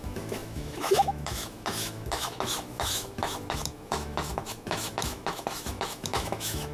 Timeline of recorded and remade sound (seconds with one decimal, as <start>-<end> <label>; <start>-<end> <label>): 0.0-6.7 remade